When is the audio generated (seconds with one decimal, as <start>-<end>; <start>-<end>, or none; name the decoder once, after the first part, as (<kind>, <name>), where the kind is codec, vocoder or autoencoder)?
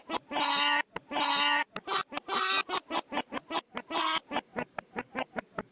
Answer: none